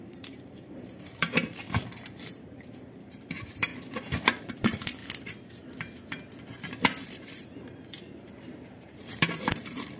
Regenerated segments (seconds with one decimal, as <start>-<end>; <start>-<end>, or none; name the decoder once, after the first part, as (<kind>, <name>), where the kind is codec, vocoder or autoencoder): 0.0-3.7 (vocoder, BigVGAN v2); 4.4-5.0; 7.1-10.0